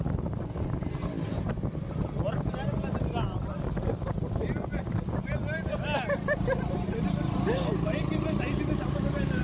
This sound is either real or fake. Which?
real